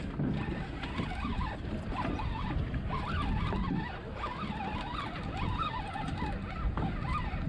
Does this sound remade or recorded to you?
recorded